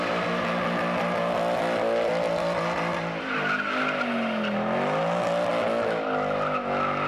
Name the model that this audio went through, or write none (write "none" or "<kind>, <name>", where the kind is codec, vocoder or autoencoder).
none